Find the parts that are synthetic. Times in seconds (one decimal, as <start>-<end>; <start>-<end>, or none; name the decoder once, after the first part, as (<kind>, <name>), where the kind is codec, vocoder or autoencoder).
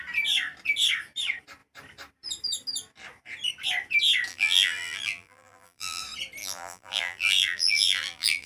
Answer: 4.3-6.0 (vocoder, BigVGAN v2); 6.4-8.5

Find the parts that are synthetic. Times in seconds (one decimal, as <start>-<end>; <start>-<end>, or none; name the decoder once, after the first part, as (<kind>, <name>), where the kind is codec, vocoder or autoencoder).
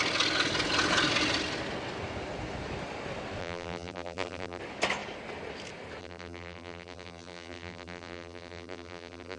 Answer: 3.4-4.6 (vocoder, BigVGAN v2); 6.0-9.4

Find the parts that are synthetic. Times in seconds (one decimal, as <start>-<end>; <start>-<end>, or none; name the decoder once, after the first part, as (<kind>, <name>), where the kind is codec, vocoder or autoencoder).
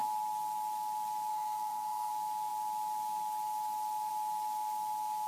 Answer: 1.3-2.1 (codec, SNAC)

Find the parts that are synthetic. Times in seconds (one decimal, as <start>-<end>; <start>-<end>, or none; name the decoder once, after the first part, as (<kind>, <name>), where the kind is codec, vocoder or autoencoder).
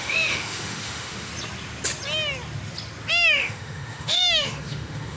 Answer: 0.0-1.3 (autoencoder, DAC-VAE); 3.1-5.2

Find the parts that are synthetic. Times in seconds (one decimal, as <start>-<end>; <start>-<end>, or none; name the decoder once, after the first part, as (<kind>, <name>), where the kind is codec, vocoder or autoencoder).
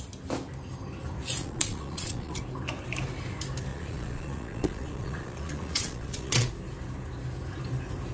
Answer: 1.4-2.4 (vocoder, Vocos); 3.7-6.5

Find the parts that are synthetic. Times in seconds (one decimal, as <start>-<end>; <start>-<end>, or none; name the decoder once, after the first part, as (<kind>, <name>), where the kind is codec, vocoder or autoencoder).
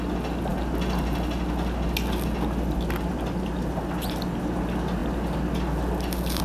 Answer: none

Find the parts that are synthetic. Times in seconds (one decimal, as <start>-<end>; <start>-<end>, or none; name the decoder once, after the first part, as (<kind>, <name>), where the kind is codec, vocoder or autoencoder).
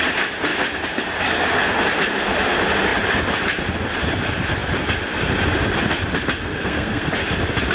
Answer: 6.5-7.1 (codec, SNAC)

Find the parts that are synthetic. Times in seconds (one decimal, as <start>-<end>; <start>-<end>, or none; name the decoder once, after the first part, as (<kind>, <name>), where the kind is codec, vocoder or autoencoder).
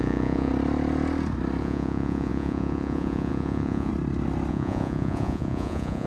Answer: 0.0-0.5 (vocoder, Vocos); 1.6-3.9; 4.5-6.1